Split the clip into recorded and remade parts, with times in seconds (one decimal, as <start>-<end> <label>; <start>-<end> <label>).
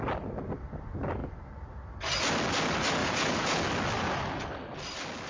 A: 0.0-3.0 recorded; 3.0-3.6 remade; 3.6-5.3 recorded